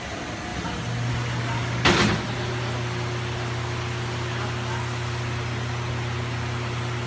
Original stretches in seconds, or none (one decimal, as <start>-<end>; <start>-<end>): 0.0-7.1